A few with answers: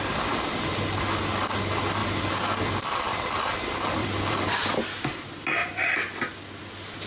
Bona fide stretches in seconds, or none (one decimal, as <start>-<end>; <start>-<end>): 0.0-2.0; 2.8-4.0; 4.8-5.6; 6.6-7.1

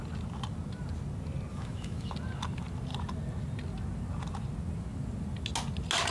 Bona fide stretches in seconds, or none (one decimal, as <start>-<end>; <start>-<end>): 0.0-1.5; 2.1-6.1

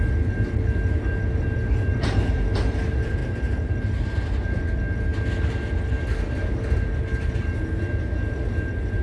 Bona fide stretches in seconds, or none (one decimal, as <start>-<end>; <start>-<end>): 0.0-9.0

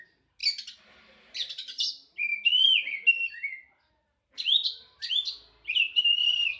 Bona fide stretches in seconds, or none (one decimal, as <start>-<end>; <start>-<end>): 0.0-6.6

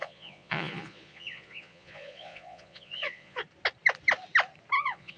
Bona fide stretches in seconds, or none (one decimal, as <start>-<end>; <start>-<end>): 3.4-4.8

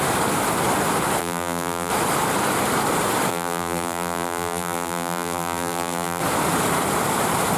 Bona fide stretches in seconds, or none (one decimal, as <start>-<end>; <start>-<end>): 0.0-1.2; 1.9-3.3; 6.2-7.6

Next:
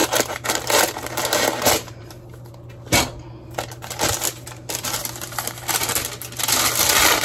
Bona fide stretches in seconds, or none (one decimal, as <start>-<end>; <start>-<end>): 2.1-7.2

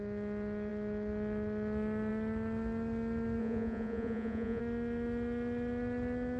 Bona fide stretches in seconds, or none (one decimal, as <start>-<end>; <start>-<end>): 0.0-3.4; 4.6-6.4